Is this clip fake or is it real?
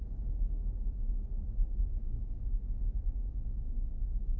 fake